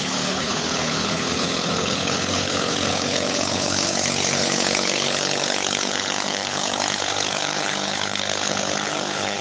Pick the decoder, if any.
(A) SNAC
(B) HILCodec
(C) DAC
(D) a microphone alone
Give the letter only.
B